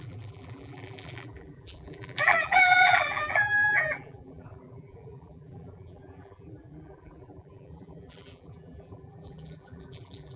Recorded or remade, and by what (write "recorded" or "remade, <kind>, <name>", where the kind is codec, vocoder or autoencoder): remade, vocoder, BigVGAN v2